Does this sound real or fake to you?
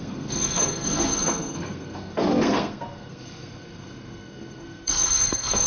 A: fake